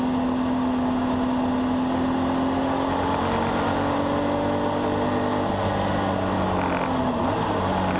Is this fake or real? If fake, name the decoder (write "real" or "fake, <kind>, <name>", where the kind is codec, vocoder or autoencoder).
real